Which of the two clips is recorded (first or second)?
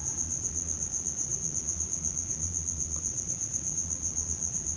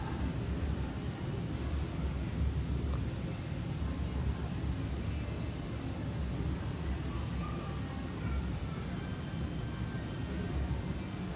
second